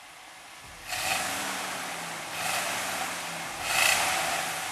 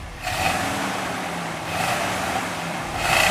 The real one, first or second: first